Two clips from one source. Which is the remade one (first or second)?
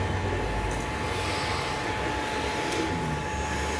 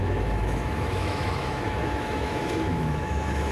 second